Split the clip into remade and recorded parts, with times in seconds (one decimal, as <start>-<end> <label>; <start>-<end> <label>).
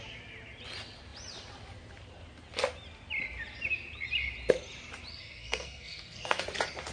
0.0-5.1 recorded; 5.1-6.4 remade; 6.4-6.9 recorded